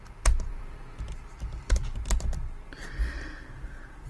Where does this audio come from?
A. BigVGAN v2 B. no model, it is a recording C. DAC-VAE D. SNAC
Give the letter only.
A